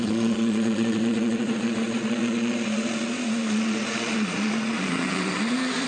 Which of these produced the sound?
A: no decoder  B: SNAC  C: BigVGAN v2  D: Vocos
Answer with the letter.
D